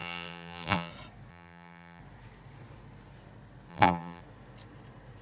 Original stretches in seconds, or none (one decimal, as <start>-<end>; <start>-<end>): 0.9-1.3; 2.0-3.7; 4.2-5.2

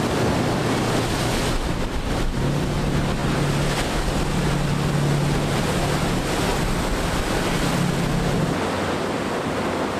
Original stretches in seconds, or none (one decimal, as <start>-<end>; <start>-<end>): 0.0-0.6; 1.4-6.5; 7.2-10.0

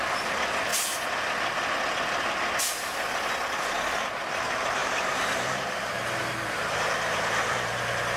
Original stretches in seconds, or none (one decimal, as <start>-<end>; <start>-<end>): 0.7-4.3